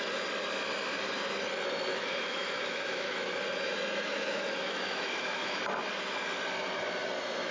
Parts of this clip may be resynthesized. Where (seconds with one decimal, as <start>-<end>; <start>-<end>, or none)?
1.9-3.3; 4.1-5.6

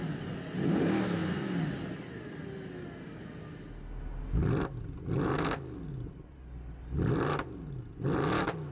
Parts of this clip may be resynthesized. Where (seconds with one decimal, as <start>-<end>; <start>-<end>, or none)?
none

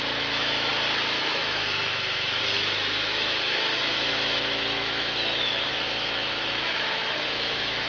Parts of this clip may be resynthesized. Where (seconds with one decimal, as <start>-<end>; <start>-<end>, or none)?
0.0-0.7; 1.2-7.9

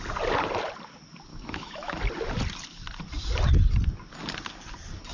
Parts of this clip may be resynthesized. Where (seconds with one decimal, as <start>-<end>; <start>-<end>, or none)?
1.3-2.0

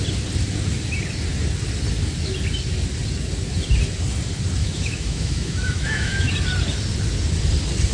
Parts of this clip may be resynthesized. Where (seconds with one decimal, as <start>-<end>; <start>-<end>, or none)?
4.6-6.3